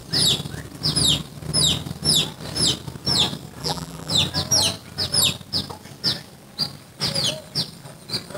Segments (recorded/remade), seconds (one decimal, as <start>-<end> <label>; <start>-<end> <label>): 0.0-3.6 recorded; 3.6-4.1 remade; 4.1-8.4 recorded